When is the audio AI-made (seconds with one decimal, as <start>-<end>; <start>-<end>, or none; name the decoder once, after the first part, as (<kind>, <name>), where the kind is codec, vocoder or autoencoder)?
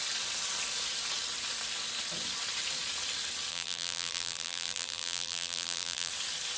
3.5-6.1 (vocoder, BigVGAN v2)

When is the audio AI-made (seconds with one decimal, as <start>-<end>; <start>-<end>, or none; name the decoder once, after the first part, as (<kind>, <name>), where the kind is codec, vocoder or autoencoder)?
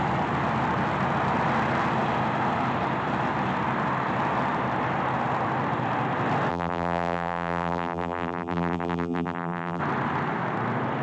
6.5-9.8 (vocoder, BigVGAN v2)